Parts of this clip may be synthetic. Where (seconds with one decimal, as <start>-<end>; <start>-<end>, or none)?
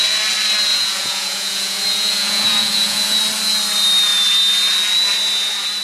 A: 0.7-3.2